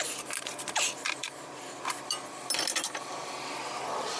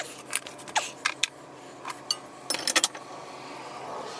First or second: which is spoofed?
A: first